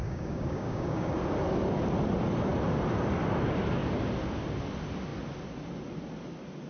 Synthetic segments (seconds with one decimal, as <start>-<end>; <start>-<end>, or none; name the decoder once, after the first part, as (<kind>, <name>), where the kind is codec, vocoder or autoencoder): 0.0-1.1 (codec, DAC)